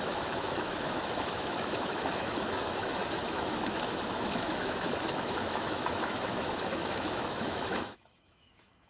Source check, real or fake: fake